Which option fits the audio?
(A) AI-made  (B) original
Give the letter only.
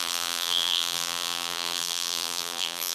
A